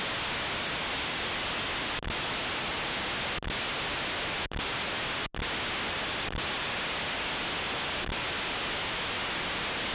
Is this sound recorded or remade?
recorded